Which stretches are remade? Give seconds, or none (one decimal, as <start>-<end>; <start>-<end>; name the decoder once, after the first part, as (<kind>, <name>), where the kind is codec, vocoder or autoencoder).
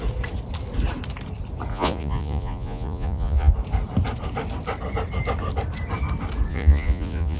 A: 1.7-3.5 (vocoder, Vocos); 6.5-7.4